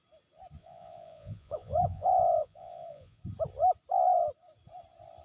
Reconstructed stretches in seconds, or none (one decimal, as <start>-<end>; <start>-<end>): 0.6-3.2